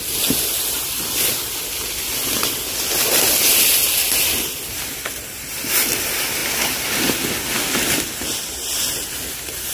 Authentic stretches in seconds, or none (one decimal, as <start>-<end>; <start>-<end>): 0.0-9.7